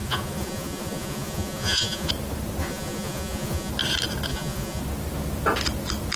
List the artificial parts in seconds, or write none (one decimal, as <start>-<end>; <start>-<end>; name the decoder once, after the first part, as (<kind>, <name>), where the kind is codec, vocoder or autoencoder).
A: 0.0-2.1 (vocoder, Vocos); 2.6-3.7; 4.3-4.8